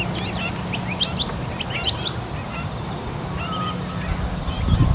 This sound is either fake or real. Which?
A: real